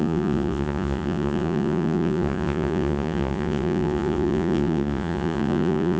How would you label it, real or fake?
fake